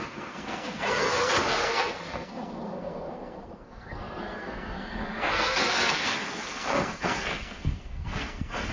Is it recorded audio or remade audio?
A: remade